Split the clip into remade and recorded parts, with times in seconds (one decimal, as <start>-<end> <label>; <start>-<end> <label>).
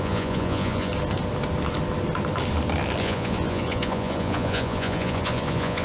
0.0-0.9 remade; 0.9-3.0 recorded; 3.0-5.8 remade